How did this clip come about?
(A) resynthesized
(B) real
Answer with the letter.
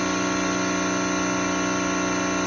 B